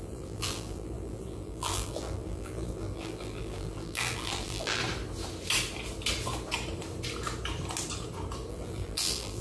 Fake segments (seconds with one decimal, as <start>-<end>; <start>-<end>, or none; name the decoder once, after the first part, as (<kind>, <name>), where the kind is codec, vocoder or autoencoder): 0.0-4.8 (vocoder, BigVGAN v2); 8.5-9.4